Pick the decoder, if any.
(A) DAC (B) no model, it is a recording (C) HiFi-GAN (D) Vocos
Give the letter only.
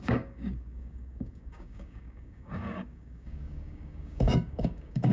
A